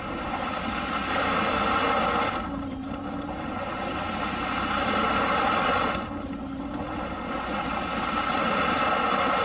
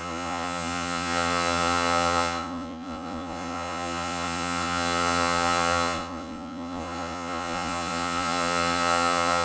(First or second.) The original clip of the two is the first